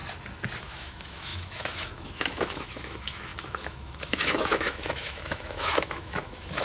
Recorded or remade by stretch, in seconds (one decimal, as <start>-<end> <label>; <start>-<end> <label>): 0.0-0.6 recorded; 0.6-6.6 remade